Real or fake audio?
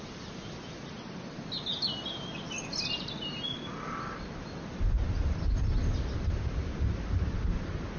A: real